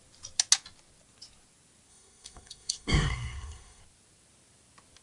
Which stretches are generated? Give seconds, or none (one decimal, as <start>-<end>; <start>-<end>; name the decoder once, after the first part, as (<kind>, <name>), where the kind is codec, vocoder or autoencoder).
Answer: 1.9-3.8 (codec, SNAC)